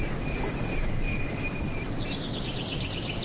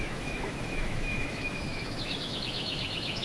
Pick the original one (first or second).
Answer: first